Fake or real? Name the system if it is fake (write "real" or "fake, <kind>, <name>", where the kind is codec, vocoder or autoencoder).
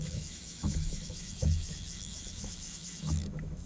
fake, autoencoder, DAC-VAE